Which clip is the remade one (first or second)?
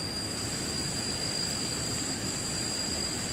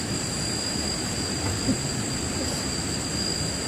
first